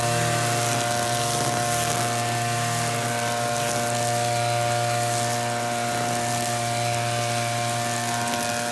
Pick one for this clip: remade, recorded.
recorded